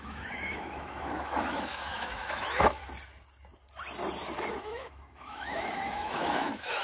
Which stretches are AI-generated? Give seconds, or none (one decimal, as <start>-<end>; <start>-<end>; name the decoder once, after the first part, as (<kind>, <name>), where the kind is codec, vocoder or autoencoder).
0.0-2.8 (autoencoder, DAC-VAE); 4.6-6.8

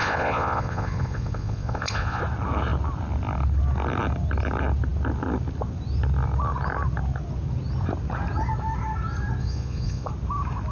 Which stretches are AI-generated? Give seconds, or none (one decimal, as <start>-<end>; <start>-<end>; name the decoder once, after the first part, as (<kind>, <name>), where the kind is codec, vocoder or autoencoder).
0.0-2.2 (vocoder, Vocos); 9.4-10.1